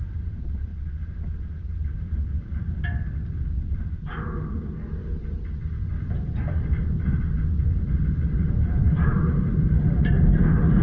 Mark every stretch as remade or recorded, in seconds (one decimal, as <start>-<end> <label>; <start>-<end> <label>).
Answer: 0.0-0.7 remade; 0.7-3.8 recorded; 3.8-5.0 remade; 5.0-6.5 recorded; 6.5-7.3 remade; 7.3-8.5 recorded; 8.5-10.8 remade